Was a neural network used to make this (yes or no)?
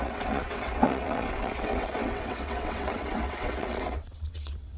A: yes